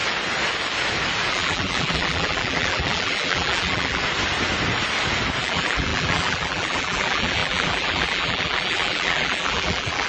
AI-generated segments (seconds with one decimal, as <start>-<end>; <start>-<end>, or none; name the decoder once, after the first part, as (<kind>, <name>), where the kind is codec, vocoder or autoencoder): 1.3-4.0 (vocoder, BigVGAN v2); 5.4-10.1